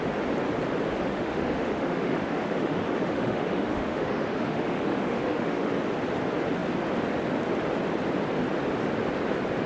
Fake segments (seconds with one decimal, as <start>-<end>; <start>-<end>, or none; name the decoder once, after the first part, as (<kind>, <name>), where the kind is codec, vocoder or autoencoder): 1.1-5.7 (autoencoder, DAC-VAE)